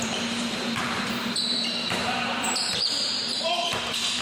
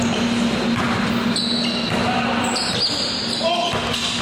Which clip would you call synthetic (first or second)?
first